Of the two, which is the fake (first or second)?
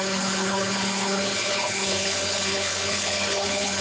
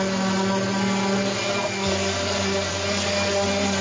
first